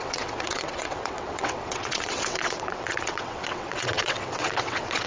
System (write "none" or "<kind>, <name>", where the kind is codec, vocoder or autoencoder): vocoder, WaveNeXt